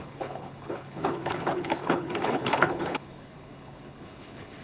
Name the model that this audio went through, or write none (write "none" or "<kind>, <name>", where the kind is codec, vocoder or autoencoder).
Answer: codec, HILCodec